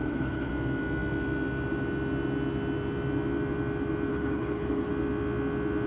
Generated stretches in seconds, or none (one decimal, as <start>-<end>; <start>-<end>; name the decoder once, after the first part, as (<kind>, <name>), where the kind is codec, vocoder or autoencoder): 0.0-0.5 (codec, HILCodec); 4.1-4.9